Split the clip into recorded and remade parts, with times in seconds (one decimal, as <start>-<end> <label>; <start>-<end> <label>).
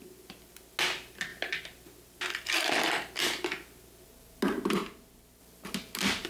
0.0-6.3 recorded